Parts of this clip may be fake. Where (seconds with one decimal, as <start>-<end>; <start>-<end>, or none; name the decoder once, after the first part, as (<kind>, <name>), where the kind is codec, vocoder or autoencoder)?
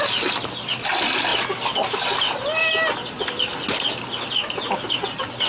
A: none